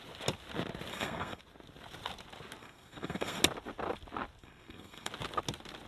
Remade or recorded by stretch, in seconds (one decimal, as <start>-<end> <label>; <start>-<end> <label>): 0.0-0.9 recorded; 0.9-1.4 remade; 1.4-2.6 recorded; 2.6-3.4 remade; 3.4-4.4 recorded; 4.4-5.1 remade; 5.1-5.9 recorded